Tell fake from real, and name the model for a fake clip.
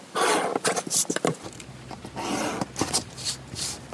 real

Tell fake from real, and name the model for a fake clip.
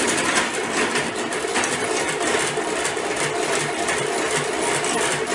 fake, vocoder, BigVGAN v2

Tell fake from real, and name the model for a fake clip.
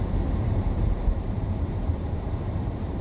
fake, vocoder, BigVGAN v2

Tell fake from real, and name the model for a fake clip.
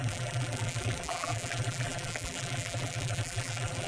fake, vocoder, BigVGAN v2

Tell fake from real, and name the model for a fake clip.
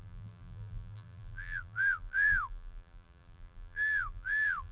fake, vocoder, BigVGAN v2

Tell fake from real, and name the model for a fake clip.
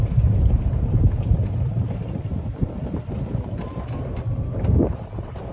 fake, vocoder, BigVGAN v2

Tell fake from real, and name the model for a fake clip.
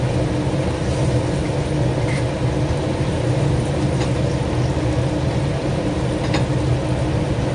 real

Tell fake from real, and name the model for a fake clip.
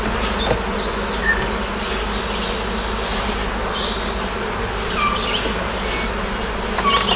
real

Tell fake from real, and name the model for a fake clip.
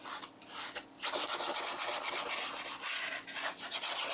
real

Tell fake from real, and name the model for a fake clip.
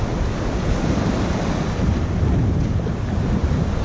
real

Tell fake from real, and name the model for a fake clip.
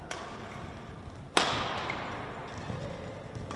real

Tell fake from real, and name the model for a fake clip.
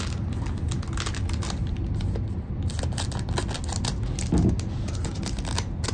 real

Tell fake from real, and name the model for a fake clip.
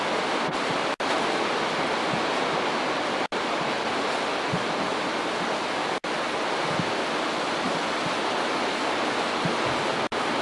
real